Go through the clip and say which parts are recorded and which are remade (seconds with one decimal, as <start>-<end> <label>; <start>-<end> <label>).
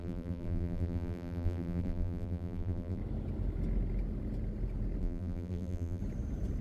0.0-3.0 remade; 3.0-5.0 recorded; 5.0-6.0 remade; 6.0-6.6 recorded